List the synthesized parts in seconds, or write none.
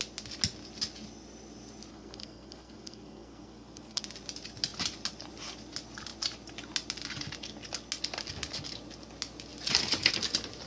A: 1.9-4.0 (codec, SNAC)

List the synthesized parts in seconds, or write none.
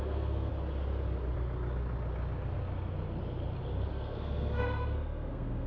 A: 0.0-0.5 (codec, SNAC); 3.9-5.7